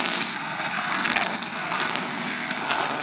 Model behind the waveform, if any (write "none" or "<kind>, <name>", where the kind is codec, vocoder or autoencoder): codec, SNAC